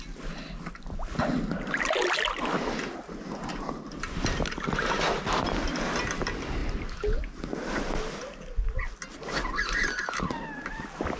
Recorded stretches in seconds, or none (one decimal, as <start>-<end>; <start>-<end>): 0.0-11.2